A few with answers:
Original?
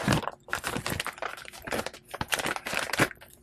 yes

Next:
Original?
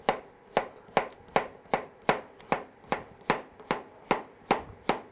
yes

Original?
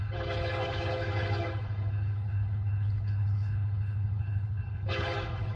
no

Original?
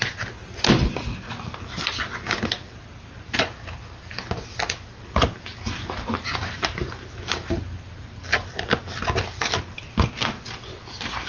yes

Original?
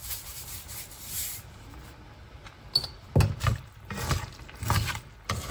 yes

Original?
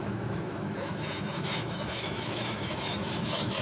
no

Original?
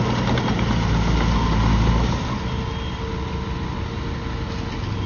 yes